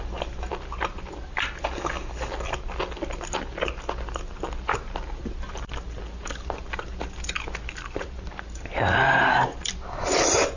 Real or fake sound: real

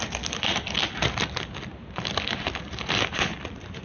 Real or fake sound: real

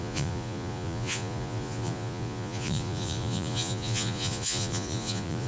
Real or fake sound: fake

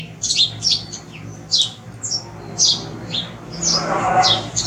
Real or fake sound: real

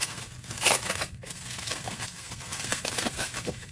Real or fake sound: fake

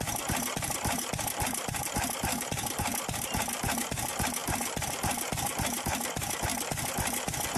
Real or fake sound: real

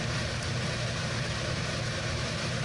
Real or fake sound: fake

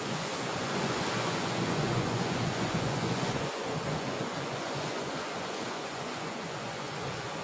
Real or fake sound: fake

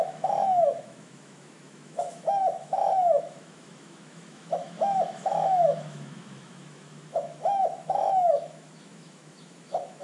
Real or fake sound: fake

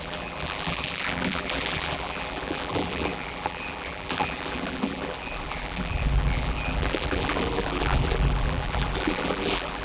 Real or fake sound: fake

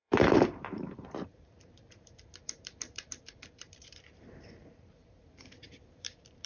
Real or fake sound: fake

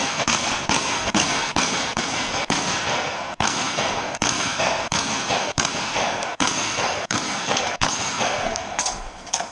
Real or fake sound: fake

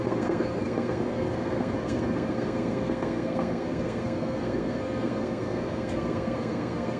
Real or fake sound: fake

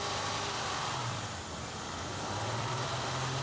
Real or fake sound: fake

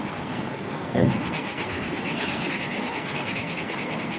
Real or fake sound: fake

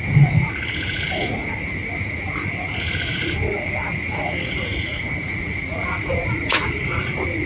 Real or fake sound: fake